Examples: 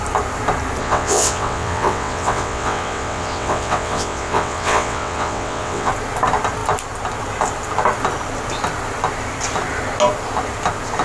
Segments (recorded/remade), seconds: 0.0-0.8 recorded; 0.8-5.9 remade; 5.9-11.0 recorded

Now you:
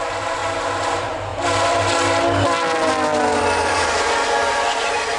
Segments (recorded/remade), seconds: 0.0-0.4 remade; 0.4-0.9 recorded; 0.9-1.3 remade; 1.3-3.7 recorded; 3.7-5.2 remade

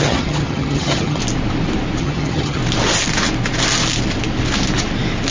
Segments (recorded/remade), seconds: 0.0-1.2 remade; 1.2-2.0 recorded; 2.0-2.6 remade; 2.6-5.3 recorded

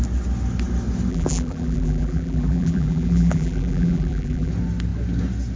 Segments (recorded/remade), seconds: 0.0-1.1 recorded; 1.1-4.5 remade; 4.5-5.6 recorded

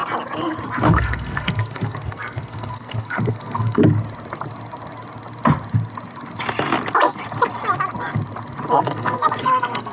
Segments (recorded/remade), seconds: 0.0-0.8 recorded; 0.8-3.8 remade; 3.8-8.7 recorded; 8.7-9.9 remade